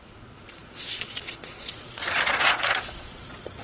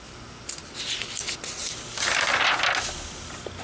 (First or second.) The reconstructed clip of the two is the first